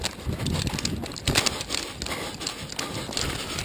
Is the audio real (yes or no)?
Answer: yes